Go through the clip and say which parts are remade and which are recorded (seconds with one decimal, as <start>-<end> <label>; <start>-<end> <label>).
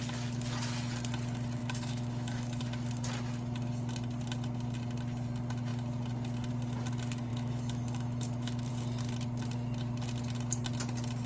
0.0-1.6 recorded; 1.6-2.6 remade; 2.6-7.3 recorded; 7.3-8.7 remade; 8.7-11.3 recorded